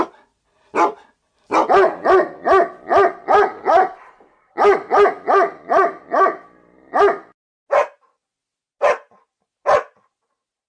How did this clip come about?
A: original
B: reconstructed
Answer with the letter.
A